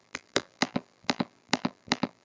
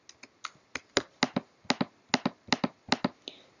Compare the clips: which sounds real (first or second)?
second